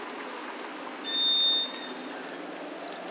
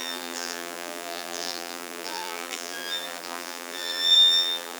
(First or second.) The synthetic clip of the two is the second